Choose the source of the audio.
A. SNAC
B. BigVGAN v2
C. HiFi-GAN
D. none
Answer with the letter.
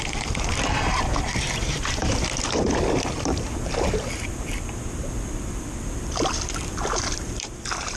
B